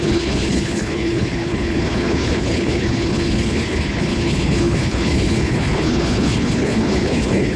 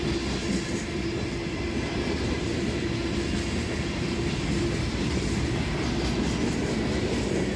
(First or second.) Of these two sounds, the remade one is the first